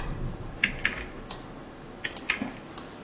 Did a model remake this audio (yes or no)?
no